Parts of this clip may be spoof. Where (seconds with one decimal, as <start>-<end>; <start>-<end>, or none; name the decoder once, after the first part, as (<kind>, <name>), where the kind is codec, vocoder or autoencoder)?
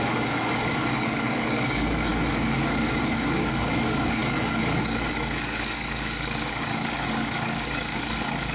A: 0.0-8.5 (codec, DAC)